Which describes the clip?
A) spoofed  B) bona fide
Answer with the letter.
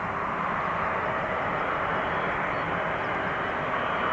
B